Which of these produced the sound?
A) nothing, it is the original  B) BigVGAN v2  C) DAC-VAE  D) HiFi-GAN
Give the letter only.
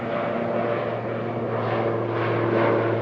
A